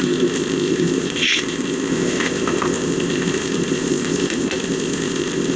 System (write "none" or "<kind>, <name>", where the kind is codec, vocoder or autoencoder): codec, ZipCodec